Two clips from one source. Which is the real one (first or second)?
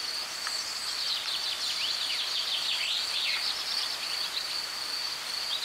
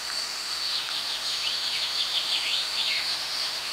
first